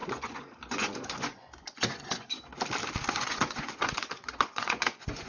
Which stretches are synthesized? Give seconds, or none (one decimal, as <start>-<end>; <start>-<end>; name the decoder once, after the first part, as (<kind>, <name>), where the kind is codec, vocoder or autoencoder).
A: 0.0-2.5 (vocoder, Vocos); 3.1-5.3